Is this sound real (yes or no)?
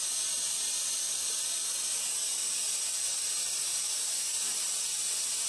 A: yes